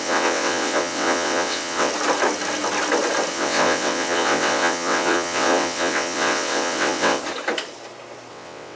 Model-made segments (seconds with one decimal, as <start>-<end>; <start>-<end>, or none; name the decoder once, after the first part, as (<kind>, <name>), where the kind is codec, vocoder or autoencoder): 0.0-1.9 (vocoder, WaveNeXt); 3.3-7.2; 8.3-8.8